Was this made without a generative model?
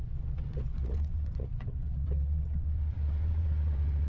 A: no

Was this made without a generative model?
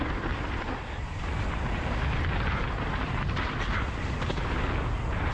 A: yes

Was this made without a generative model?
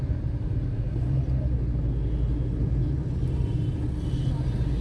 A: yes